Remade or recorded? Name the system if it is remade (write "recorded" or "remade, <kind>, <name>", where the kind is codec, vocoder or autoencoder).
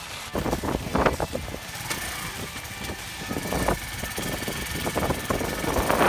recorded